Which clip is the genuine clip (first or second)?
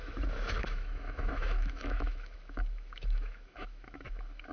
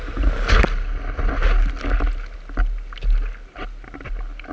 second